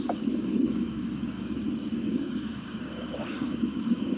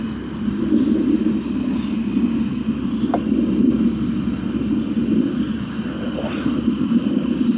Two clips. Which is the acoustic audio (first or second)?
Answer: second